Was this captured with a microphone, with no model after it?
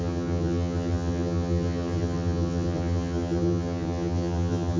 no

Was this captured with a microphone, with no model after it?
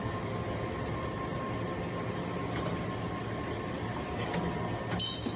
yes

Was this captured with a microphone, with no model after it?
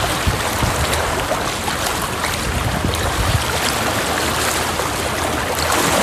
yes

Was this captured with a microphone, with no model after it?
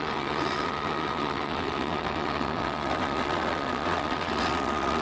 no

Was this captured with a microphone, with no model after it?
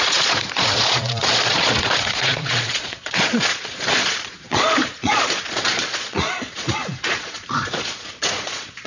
no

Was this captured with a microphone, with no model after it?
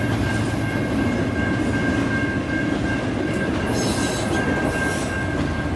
yes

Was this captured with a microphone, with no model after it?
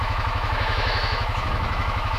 no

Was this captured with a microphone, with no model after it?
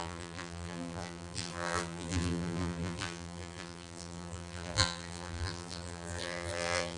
no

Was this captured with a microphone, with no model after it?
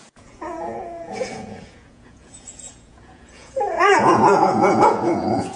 no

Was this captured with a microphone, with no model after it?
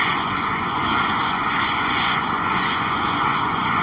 no